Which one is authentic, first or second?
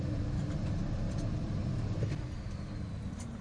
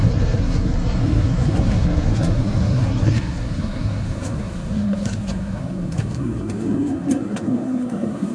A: first